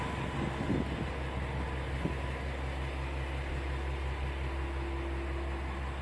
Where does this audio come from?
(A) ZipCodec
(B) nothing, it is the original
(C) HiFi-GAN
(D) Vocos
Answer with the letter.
B